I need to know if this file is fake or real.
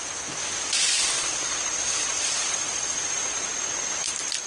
real